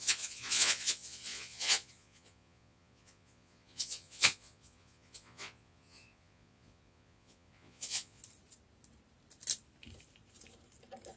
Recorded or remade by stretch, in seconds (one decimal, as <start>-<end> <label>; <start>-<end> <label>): 0.0-8.2 remade; 8.2-11.2 recorded